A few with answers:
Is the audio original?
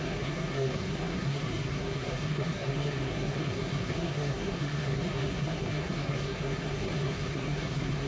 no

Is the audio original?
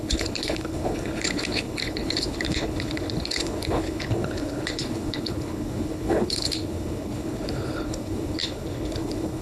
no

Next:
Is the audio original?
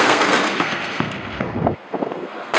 no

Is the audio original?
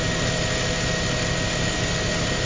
yes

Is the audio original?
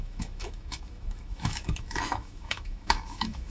no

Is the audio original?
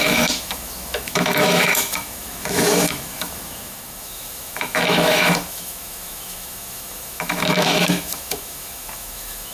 no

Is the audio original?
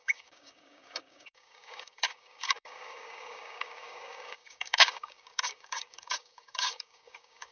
no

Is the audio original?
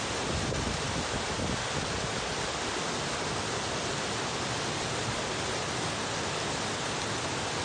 yes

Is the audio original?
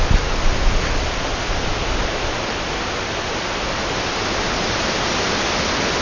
yes